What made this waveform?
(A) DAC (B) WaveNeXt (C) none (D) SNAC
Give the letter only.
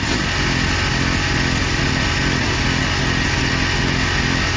C